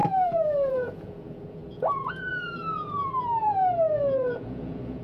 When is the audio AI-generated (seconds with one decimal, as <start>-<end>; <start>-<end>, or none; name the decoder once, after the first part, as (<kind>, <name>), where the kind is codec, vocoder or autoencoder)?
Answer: 0.0-5.0 (vocoder, Vocos)